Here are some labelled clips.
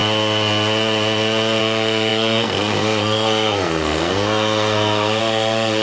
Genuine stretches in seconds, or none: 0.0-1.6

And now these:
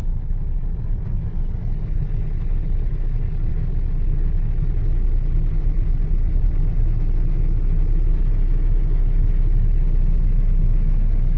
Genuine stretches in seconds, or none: 0.0-11.4

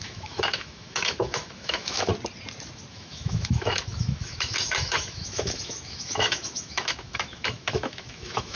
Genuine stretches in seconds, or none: 2.1-2.9

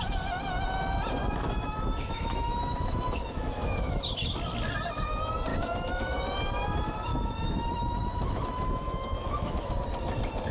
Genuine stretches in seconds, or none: 0.0-1.2; 4.0-5.5; 6.3-7.1; 9.7-10.5

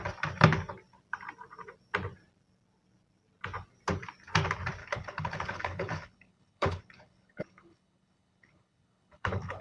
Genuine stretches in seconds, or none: 0.0-4.8

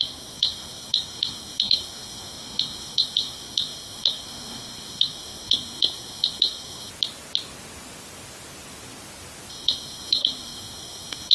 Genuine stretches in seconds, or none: 6.9-9.5

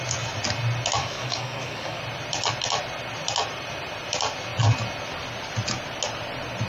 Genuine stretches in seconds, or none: 0.0-1.0; 2.0-6.7